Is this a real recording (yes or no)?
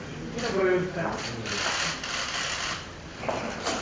yes